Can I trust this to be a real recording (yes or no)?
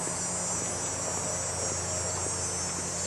yes